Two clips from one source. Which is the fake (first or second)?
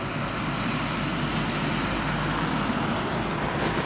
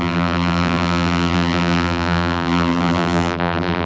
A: second